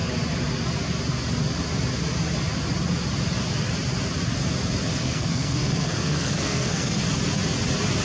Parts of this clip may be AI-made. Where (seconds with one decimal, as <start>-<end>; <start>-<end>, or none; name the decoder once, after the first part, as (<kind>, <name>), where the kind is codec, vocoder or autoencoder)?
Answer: 4.9-7.0 (codec, SNAC)